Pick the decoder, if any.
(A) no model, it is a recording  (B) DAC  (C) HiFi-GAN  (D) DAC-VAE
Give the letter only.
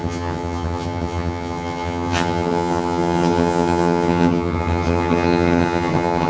C